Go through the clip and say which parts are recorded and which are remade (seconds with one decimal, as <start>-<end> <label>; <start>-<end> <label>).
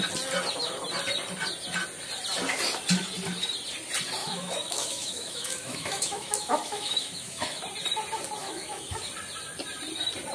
0.0-4.2 recorded; 4.2-7.6 remade; 7.6-8.4 recorded; 8.4-9.1 remade; 9.1-10.3 recorded